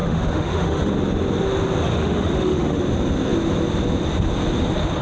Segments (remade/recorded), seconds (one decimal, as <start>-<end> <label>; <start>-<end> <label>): 0.0-0.9 remade; 0.9-1.9 recorded; 1.9-2.8 remade; 2.8-5.0 recorded